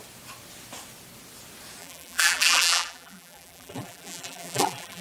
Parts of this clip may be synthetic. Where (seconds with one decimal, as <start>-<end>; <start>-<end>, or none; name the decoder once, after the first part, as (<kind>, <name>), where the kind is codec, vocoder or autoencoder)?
1.8-5.0 (vocoder, BigVGAN v2)